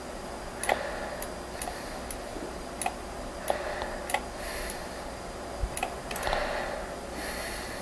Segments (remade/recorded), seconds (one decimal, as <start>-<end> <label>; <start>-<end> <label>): 0.0-7.8 recorded